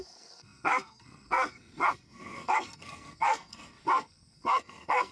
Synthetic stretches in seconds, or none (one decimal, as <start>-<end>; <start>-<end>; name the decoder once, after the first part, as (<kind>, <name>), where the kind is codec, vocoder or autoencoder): 0.0-5.1 (codec, SNAC)